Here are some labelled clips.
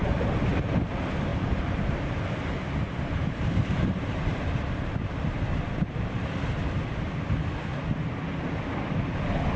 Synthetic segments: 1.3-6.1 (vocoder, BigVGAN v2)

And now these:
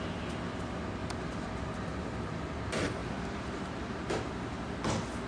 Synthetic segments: 1.0-1.6 (vocoder, BigVGAN v2); 3.0-4.2

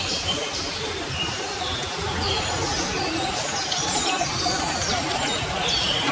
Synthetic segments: 0.0-1.8 (vocoder, BigVGAN v2); 5.5-6.1

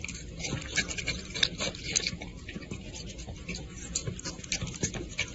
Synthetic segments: 4.0-4.8 (vocoder, BigVGAN v2)

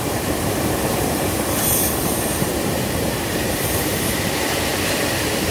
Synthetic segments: 0.0-5.5 (vocoder, BigVGAN v2)

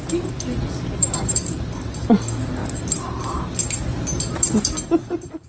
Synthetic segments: 0.0-1.7 (vocoder, BigVGAN v2); 2.6-3.4; 3.9-4.8